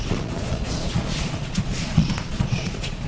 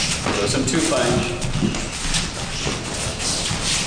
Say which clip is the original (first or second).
second